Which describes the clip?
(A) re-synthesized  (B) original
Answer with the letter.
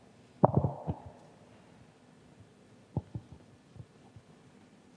B